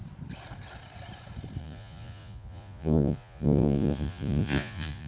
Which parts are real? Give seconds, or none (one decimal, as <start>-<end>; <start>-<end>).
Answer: 0.0-1.6